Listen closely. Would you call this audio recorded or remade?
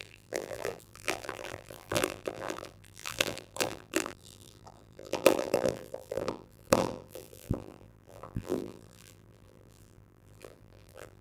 remade